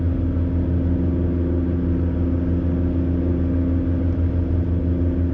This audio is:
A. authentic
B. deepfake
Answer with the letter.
A